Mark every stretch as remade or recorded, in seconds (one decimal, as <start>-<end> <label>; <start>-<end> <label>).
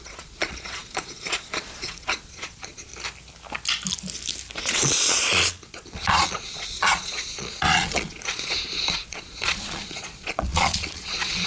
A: 0.0-2.9 remade; 2.9-4.6 recorded; 4.6-11.5 remade